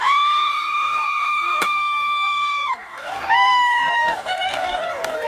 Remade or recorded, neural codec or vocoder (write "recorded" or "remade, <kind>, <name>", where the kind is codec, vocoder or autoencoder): remade, codec, DAC